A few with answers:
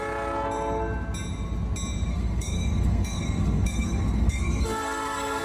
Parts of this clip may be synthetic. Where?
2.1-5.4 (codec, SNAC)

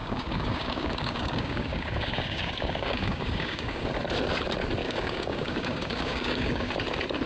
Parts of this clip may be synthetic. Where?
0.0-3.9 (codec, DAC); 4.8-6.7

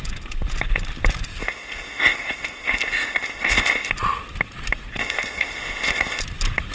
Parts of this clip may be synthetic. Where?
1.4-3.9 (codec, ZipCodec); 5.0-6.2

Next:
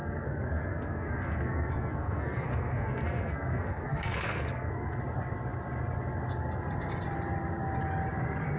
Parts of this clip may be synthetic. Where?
0.0-5.0 (codec, SNAC)